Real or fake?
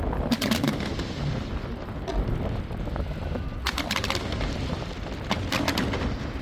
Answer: real